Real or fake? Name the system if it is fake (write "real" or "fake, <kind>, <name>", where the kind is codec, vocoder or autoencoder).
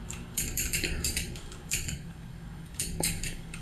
fake, codec, DAC